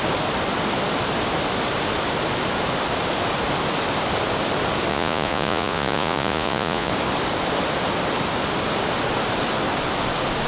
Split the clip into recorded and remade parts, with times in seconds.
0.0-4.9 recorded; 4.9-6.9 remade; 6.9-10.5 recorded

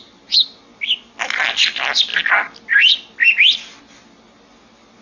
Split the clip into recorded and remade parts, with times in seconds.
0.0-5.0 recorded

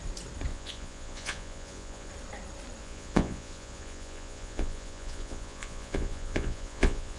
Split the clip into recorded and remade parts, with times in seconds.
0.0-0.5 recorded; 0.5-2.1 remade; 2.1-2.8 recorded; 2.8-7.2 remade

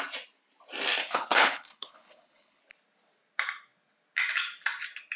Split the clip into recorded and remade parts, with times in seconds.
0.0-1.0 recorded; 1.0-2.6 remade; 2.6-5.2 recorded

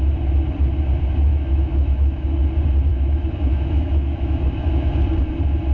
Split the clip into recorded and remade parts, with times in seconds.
0.0-1.3 recorded; 1.3-2.4 remade; 2.4-2.9 recorded; 2.9-4.9 remade; 4.9-5.7 recorded